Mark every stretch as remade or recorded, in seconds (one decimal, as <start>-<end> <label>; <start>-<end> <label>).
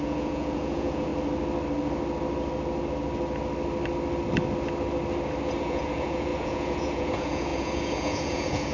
0.0-1.1 remade; 1.1-5.6 recorded; 5.6-8.7 remade